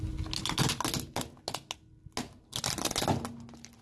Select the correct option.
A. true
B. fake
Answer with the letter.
A